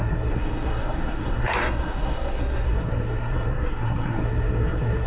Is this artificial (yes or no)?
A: yes